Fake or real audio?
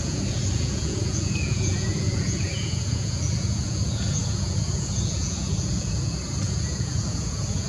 fake